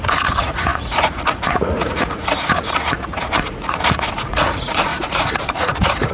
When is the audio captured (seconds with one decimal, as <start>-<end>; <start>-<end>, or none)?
none